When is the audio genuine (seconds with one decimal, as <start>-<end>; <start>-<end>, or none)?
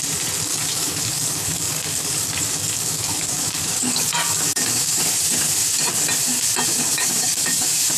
0.0-0.5; 5.0-6.7; 7.6-8.0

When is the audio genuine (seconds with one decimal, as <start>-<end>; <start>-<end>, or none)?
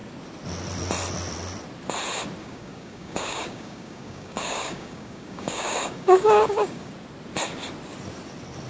0.0-2.4; 6.9-8.7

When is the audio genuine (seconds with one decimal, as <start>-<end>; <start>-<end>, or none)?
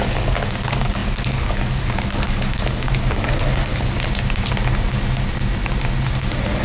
3.7-6.6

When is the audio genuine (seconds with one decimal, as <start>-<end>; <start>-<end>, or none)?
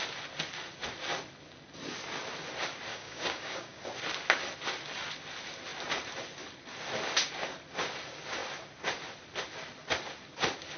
0.0-2.9; 3.8-10.8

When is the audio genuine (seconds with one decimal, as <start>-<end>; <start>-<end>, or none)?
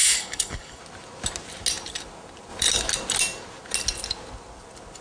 0.8-5.0